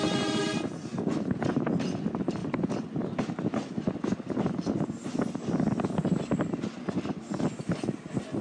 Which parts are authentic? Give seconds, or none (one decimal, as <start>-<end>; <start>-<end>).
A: 0.0-8.4